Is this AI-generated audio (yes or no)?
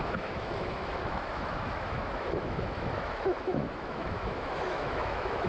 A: yes